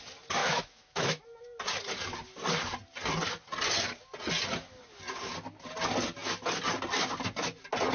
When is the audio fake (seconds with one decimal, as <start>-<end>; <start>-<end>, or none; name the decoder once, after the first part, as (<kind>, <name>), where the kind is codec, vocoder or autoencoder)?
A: 0.4-1.2 (autoencoder, DAC-VAE)